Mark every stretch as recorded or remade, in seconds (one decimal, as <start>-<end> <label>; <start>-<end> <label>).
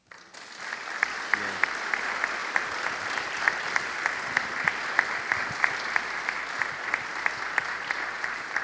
0.0-8.6 recorded